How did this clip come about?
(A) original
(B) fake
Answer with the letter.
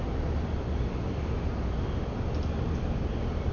A